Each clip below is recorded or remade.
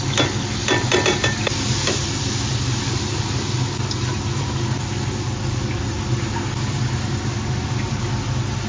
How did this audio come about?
recorded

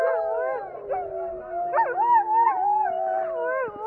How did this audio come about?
recorded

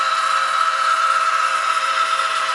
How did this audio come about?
recorded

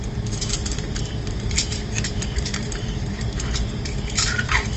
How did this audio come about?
remade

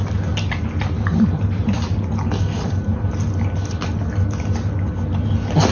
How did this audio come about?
recorded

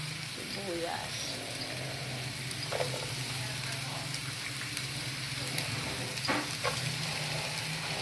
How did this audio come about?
remade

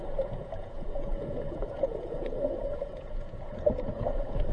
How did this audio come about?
remade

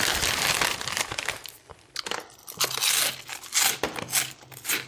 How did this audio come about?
recorded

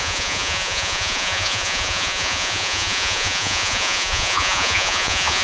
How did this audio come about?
remade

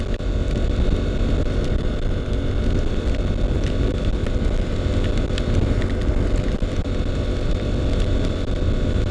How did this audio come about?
recorded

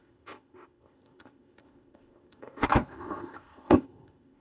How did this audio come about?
remade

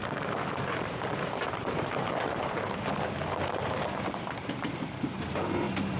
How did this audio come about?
remade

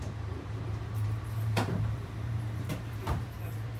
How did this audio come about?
remade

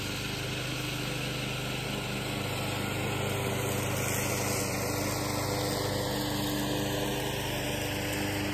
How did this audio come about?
recorded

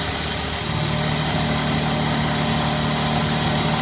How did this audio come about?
recorded